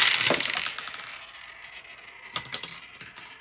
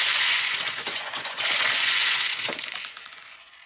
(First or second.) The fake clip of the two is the second